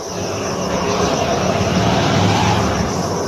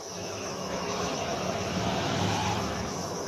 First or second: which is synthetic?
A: second